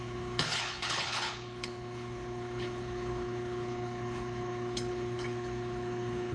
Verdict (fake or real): fake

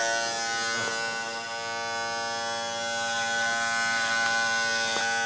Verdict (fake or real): real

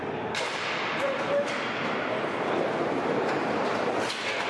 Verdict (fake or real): real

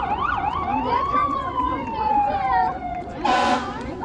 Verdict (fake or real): fake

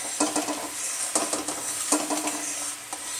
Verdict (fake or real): real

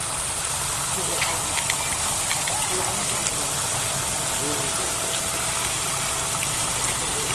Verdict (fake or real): real